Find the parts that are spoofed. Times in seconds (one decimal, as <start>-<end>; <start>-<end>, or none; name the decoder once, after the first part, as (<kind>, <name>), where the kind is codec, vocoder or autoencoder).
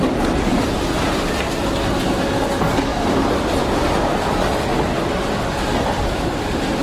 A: 2.9-4.5 (vocoder, BigVGAN v2); 5.7-6.8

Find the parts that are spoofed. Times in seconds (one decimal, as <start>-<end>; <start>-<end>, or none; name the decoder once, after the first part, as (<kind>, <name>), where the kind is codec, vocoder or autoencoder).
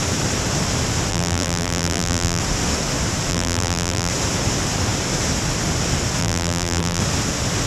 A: 1.1-2.4 (vocoder, BigVGAN v2); 3.3-4.1; 6.2-7.0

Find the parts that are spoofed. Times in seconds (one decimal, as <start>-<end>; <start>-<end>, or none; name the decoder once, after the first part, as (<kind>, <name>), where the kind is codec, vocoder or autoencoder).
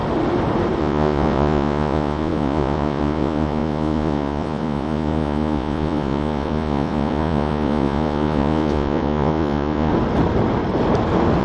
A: 0.8-9.9 (vocoder, Vocos)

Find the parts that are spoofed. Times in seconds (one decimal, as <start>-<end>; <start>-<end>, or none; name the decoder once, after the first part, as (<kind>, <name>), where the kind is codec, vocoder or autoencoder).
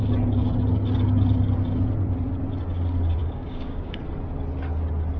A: 3.2-4.0 (codec, DAC)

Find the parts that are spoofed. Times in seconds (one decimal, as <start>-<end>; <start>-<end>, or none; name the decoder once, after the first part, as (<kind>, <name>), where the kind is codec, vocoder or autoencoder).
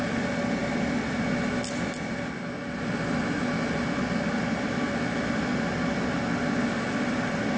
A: none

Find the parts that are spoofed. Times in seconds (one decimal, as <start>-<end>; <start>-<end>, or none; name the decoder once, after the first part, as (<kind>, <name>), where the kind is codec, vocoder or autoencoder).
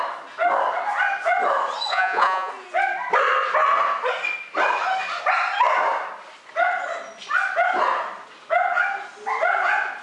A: 1.9-2.5 (vocoder, Vocos)